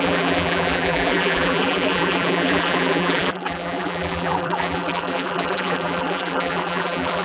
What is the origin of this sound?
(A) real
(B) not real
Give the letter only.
B